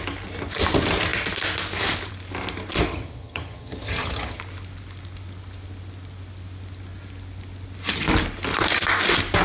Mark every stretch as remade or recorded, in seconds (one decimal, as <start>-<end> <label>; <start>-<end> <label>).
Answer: 0.0-2.9 recorded; 2.9-4.4 remade; 4.4-9.4 recorded